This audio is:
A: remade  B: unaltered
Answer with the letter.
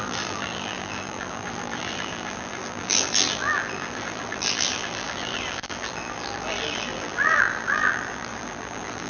A